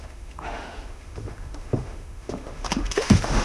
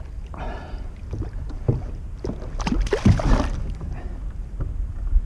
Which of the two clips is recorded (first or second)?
second